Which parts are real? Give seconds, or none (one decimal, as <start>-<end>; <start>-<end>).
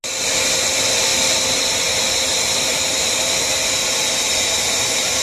0.0-5.2